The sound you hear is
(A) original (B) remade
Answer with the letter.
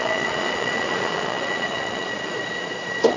B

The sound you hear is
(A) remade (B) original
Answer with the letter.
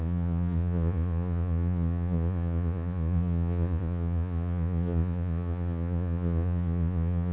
A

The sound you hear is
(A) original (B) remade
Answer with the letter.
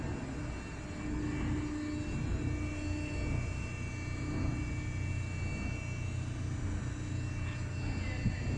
A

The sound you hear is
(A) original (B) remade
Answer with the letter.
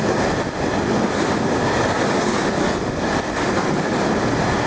A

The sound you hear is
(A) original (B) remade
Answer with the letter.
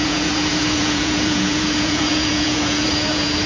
B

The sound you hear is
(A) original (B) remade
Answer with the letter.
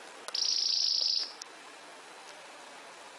A